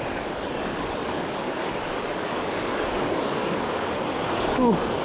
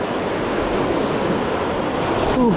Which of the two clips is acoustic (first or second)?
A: second